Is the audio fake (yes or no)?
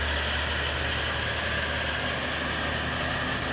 no